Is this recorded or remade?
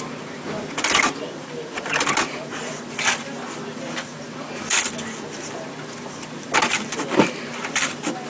remade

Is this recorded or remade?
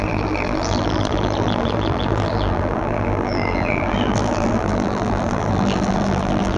remade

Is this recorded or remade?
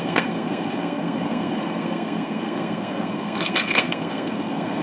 remade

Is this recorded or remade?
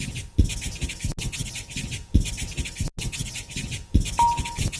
recorded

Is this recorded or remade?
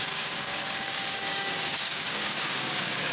remade